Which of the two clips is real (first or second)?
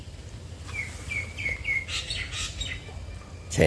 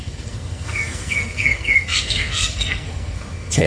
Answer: first